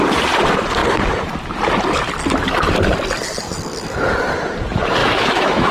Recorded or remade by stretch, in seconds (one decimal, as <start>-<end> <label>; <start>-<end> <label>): 0.0-5.0 recorded; 5.0-5.7 remade